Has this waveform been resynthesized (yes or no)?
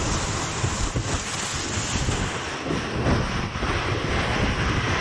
no